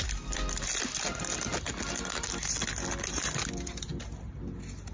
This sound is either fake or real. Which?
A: real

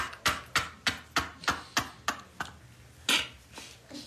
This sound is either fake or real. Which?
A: real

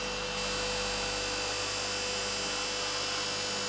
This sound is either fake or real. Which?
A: real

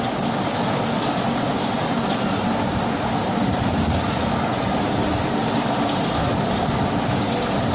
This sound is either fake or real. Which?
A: real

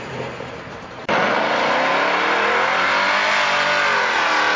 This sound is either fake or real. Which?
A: real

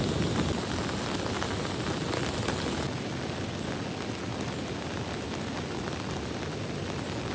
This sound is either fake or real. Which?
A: real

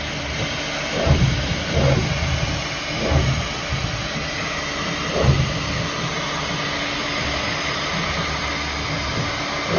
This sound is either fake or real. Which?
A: real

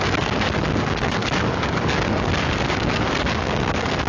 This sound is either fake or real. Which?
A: fake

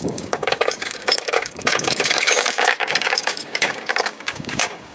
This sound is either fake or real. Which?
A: fake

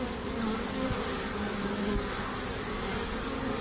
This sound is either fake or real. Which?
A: fake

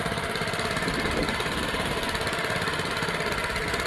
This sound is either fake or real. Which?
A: real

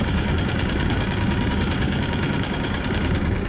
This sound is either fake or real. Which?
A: fake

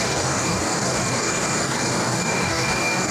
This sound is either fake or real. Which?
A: fake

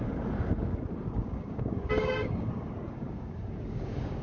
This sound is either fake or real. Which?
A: fake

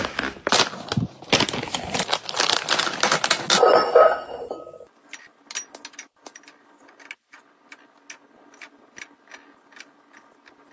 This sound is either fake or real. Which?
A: real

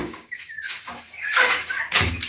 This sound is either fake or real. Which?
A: fake